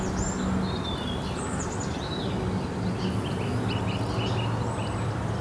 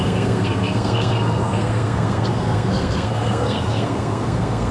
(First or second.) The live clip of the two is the first